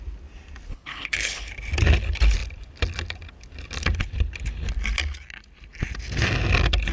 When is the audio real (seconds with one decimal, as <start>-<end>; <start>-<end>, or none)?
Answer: 0.0-0.7; 1.5-6.9

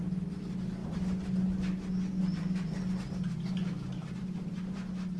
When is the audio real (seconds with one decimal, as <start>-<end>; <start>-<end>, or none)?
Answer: 0.0-4.0; 4.8-5.2

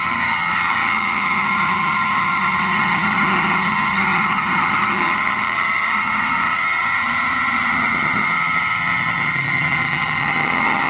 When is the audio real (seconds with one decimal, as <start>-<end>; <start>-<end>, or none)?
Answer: none

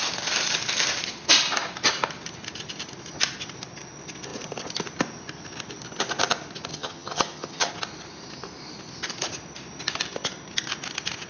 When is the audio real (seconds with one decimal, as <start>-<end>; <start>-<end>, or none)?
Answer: 0.0-6.7; 7.7-11.3

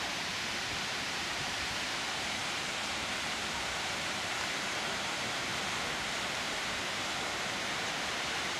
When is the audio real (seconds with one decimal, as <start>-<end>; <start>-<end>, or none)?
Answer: 2.4-3.1; 5.5-6.3

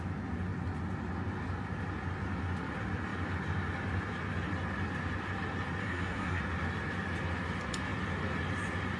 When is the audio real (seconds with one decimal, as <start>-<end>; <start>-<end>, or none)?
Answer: 0.0-5.8; 6.4-9.0